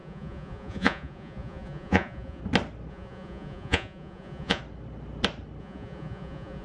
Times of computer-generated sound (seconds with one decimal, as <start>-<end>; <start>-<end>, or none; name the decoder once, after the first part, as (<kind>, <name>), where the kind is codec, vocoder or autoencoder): 0.0-2.4 (vocoder, Vocos); 2.9-4.6; 5.6-6.6